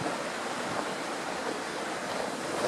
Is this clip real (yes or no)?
no